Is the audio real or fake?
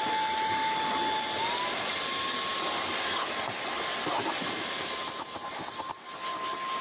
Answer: real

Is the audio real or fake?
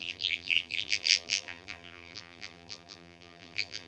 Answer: fake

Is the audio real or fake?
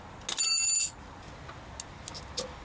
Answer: real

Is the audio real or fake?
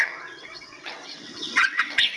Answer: fake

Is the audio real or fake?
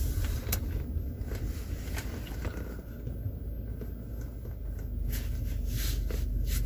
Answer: real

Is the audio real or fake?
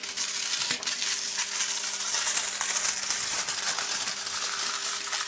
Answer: real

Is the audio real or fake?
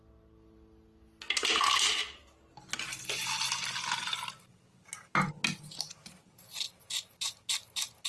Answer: real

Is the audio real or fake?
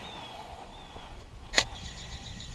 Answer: fake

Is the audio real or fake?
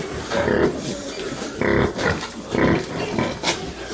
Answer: real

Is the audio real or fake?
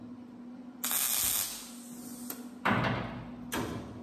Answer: real